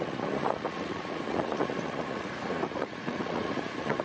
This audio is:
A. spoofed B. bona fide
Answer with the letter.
A